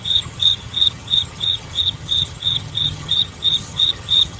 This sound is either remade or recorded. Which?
remade